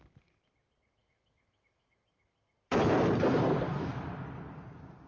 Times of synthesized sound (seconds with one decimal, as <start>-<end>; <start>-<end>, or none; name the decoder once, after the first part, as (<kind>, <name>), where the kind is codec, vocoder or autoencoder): 1.0-2.9 (autoencoder, DAC-VAE)